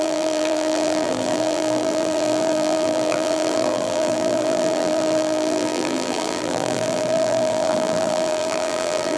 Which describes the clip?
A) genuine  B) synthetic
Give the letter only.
B